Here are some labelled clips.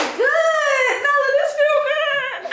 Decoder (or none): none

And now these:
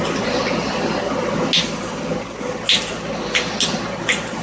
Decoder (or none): none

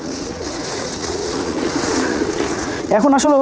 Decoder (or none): vocoder, Vocos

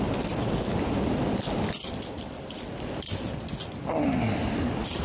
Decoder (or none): none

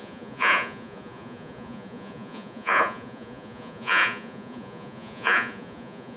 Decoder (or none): vocoder, Vocos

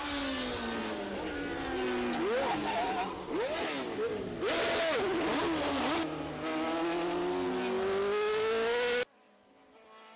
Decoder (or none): none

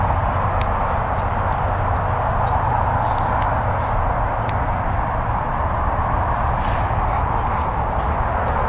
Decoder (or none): none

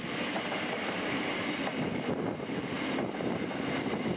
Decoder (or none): none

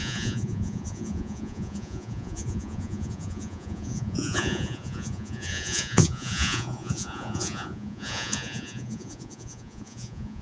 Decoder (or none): vocoder, Vocos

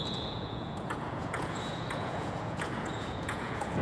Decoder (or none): vocoder, Vocos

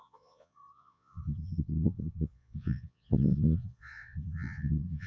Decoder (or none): vocoder, Vocos